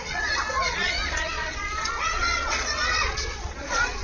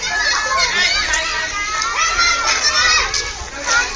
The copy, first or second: first